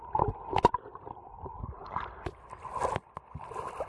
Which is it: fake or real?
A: real